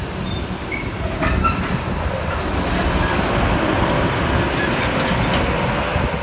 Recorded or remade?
recorded